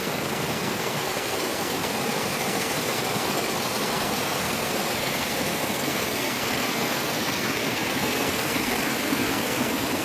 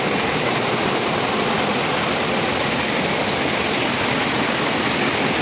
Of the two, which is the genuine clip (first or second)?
second